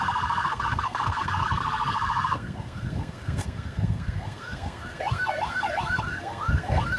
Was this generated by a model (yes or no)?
yes